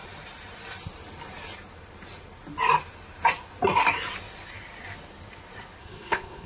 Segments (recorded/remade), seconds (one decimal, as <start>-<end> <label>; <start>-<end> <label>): 0.0-5.8 recorded; 5.8-6.5 remade